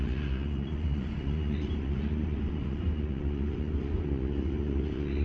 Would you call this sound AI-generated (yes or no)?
yes